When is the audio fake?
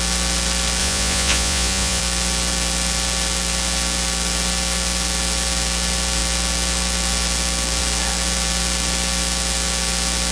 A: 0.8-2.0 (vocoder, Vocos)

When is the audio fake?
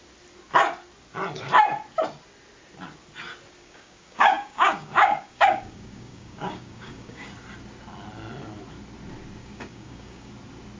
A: 3.6-7.3 (codec, DAC); 9.4-10.3